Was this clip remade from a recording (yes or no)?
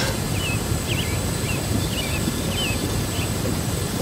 no